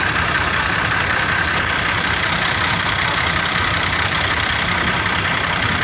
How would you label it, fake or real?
fake